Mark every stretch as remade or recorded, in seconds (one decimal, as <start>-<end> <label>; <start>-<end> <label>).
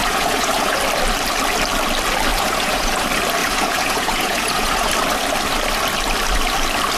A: 0.0-0.8 remade; 0.8-2.3 recorded; 2.3-2.9 remade; 2.9-3.4 recorded; 3.4-4.9 remade; 4.9-7.0 recorded